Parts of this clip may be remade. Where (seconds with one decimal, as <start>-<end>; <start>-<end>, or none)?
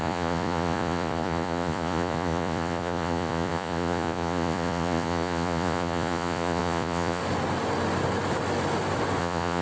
0.0-7.2; 9.2-9.6